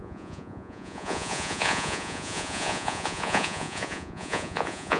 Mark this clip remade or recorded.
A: remade